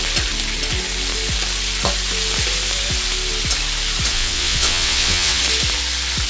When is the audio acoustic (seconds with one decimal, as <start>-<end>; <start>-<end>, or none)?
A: 0.0-4.1; 5.4-6.3